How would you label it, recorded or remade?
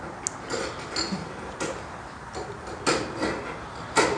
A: recorded